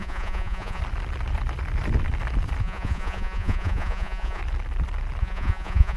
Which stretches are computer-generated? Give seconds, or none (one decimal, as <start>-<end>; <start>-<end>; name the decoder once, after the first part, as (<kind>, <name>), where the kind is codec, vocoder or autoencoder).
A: 0.0-0.8 (vocoder, Vocos); 2.6-4.4; 5.2-6.0